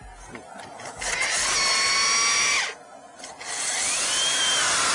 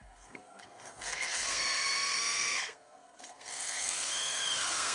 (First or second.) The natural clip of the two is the first